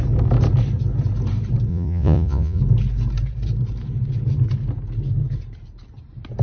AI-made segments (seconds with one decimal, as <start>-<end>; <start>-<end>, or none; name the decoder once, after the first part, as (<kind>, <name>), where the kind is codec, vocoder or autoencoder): 1.7-2.6 (vocoder, Vocos)